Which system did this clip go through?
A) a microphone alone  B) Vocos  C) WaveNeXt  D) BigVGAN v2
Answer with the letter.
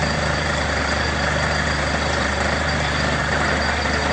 D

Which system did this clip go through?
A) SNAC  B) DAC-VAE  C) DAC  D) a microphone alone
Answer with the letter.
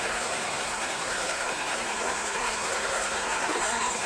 A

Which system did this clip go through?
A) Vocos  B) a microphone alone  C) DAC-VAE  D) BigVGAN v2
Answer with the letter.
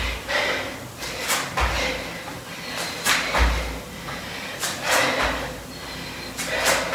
B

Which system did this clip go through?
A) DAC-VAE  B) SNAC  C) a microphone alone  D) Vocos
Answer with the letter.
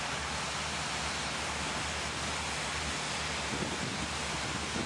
C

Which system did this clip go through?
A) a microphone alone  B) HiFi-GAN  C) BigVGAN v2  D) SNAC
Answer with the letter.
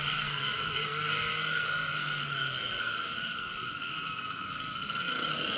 D